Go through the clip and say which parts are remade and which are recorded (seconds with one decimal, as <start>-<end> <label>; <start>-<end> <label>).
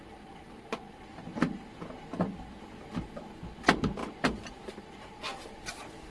0.0-6.1 recorded